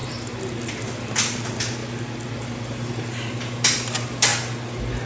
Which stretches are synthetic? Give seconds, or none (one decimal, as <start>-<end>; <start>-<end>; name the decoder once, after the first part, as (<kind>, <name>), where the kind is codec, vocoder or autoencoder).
none